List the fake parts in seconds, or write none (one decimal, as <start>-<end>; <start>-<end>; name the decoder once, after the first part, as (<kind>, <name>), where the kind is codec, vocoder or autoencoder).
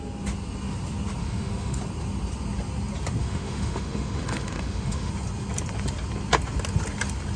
1.2-1.8 (autoencoder, DAC-VAE); 3.2-5.1